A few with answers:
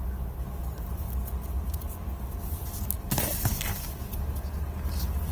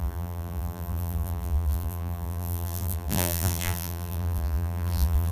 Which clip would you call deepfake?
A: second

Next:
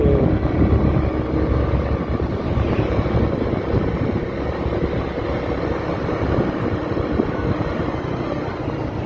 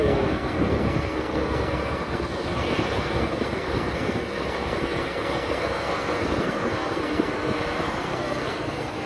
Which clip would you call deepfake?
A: second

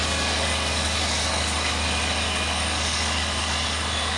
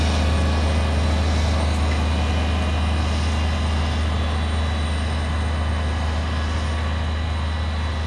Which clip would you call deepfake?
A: first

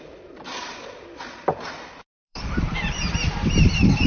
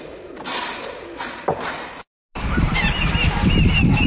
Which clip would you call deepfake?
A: first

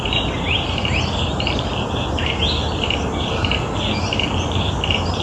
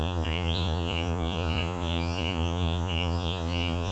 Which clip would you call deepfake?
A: second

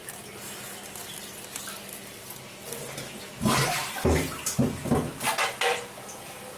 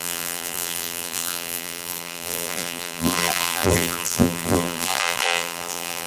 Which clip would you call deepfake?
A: second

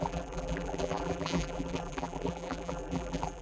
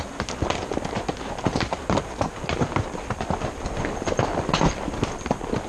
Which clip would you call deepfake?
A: first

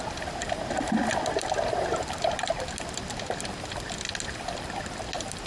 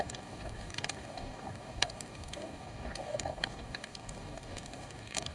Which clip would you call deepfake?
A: second